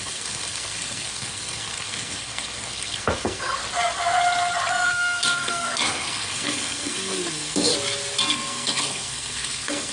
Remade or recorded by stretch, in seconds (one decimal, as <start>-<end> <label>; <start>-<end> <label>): 0.0-3.6 remade; 3.6-4.7 recorded; 4.7-7.7 remade; 7.7-8.3 recorded; 8.3-9.9 remade